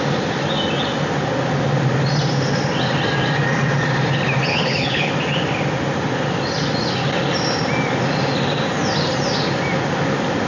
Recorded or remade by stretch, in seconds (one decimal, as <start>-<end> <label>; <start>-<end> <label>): 0.0-4.5 recorded; 4.5-5.1 remade; 5.1-10.5 recorded